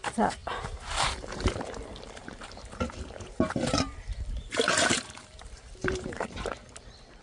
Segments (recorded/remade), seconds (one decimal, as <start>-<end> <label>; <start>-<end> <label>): 0.0-0.4 recorded; 0.4-1.5 remade; 1.5-2.2 recorded; 2.2-6.5 remade; 6.5-7.2 recorded